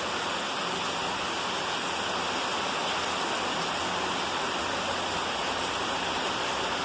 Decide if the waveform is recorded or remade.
recorded